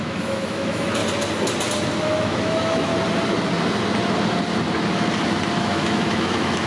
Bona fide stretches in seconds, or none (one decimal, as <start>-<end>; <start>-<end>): 1.0-2.0; 2.9-5.6